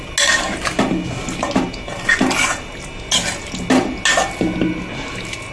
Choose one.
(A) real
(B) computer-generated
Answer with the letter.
A